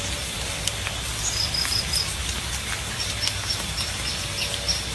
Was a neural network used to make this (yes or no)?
no